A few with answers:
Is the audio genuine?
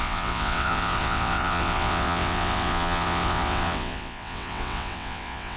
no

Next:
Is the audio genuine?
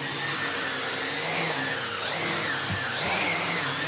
yes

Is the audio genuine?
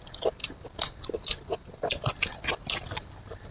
yes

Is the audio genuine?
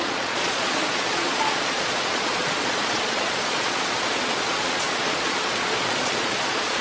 no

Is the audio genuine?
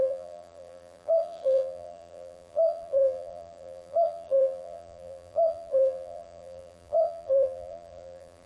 no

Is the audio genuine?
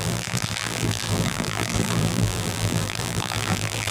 no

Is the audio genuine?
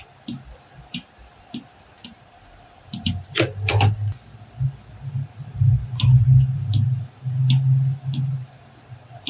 yes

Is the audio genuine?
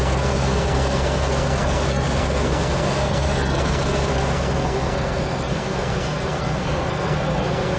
no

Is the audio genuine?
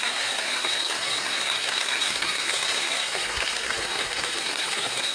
no